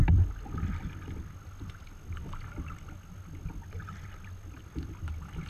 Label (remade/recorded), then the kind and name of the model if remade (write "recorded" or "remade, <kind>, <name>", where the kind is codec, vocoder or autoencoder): recorded